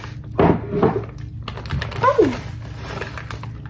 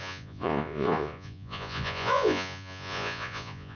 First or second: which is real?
first